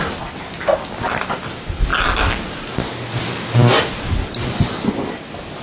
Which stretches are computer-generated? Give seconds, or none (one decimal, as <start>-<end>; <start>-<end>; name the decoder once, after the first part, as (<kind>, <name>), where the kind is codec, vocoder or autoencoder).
none